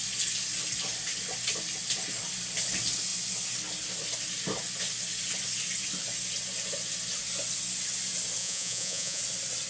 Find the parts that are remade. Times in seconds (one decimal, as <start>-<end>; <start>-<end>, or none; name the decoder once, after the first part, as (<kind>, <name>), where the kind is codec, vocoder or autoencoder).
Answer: 8.4-9.2 (vocoder, Vocos)